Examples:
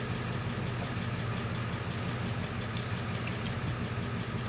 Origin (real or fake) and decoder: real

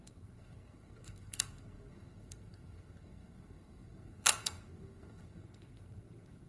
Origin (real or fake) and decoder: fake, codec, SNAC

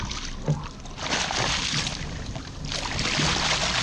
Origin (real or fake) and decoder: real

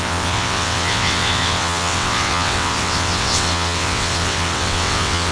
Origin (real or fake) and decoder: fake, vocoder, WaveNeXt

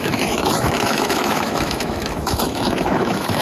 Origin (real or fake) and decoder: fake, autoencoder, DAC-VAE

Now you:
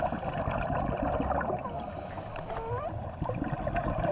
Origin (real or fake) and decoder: real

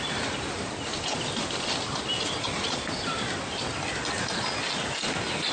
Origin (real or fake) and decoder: real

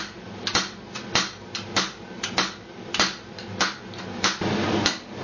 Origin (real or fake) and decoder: real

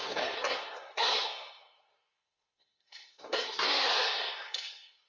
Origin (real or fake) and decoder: fake, codec, SNAC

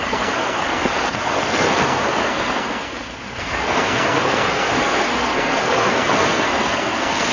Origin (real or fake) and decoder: fake, codec, SNAC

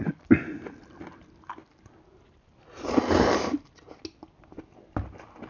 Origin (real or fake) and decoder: real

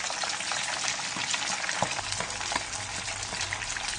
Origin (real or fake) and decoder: real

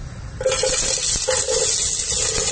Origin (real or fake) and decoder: real